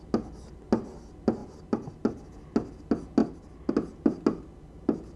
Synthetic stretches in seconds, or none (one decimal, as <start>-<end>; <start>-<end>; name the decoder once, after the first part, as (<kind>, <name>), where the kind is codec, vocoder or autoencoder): 3.2-3.7 (vocoder, BigVGAN v2)